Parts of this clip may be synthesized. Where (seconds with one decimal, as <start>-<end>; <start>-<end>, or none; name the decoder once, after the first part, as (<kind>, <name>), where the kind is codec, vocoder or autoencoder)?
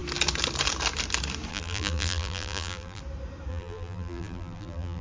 1.5-3.0 (vocoder, BigVGAN v2); 3.5-5.0